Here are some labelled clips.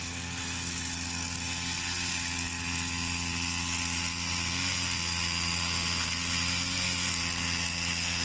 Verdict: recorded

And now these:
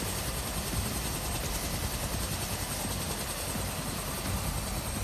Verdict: recorded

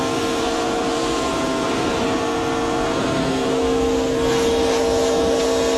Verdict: recorded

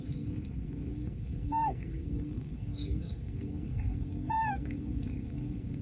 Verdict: remade